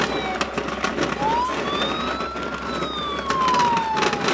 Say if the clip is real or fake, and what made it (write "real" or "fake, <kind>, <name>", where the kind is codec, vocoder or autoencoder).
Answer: real